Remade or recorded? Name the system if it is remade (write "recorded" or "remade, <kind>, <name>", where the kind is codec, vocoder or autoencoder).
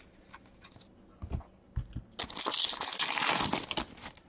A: recorded